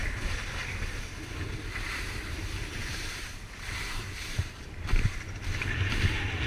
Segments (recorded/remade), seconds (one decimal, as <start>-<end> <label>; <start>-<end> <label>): 0.0-2.8 recorded; 2.8-4.9 remade; 4.9-6.5 recorded

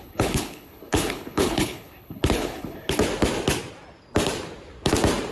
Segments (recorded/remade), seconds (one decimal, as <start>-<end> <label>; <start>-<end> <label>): 0.0-3.0 remade; 3.0-5.3 recorded

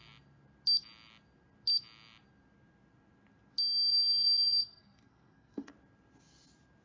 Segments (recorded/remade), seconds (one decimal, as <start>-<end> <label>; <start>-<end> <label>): 0.0-3.9 recorded; 3.9-5.7 remade; 5.7-6.8 recorded